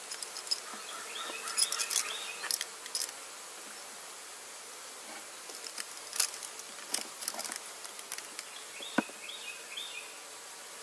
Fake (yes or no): no